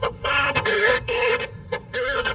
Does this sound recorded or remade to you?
remade